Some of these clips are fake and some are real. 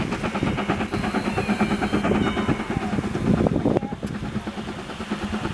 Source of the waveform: real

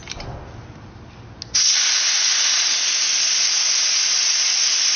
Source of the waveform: real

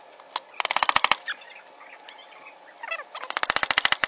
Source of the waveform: real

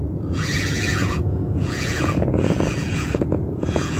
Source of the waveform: fake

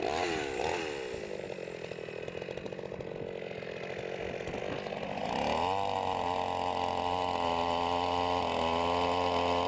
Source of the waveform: real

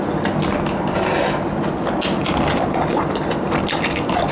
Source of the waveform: real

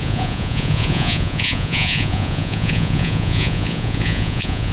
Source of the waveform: fake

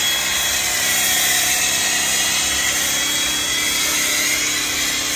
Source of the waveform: real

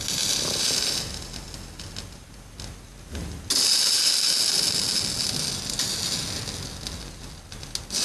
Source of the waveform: real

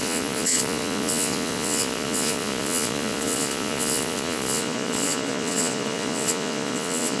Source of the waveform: fake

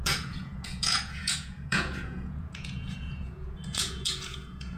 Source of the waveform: fake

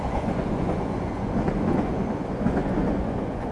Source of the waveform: fake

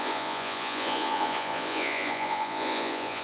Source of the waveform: fake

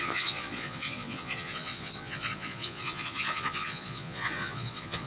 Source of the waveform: fake